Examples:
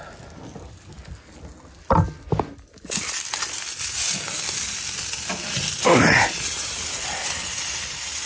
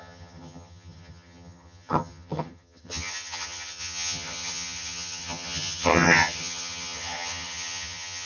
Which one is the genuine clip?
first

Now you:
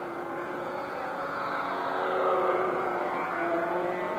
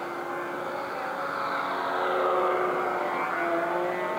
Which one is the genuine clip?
second